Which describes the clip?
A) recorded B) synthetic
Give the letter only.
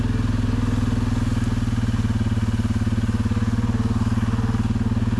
A